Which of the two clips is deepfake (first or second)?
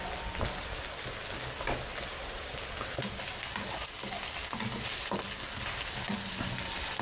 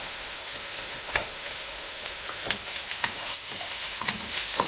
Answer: second